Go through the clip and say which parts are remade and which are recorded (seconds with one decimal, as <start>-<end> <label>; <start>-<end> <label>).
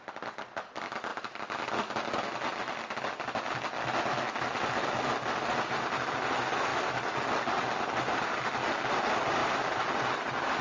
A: 0.0-10.6 recorded